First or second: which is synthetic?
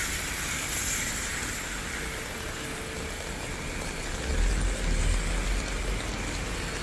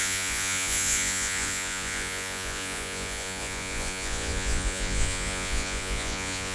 second